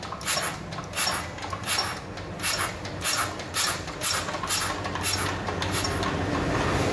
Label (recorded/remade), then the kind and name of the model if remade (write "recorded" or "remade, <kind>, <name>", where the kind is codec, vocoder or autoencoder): recorded